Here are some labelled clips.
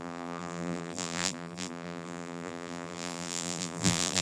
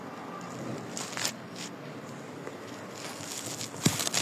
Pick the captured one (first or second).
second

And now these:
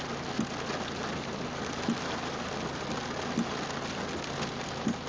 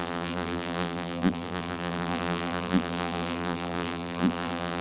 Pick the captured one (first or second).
first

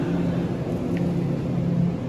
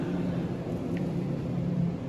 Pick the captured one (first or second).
first